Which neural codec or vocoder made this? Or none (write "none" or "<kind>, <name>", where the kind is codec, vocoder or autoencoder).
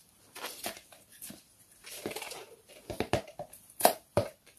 vocoder, BigVGAN v2